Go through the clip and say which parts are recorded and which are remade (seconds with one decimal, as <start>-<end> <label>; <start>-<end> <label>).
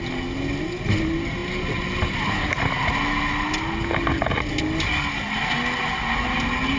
0.0-6.8 recorded